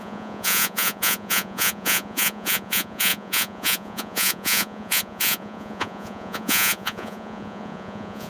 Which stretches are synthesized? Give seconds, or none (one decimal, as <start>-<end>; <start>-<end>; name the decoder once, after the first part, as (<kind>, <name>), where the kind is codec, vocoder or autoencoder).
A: 0.0-8.3 (vocoder, Vocos)